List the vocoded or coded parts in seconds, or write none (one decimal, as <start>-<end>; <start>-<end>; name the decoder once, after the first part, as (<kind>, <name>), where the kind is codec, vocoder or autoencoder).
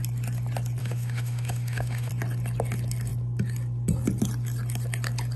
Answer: 0.8-2.1 (autoencoder, DAC-VAE)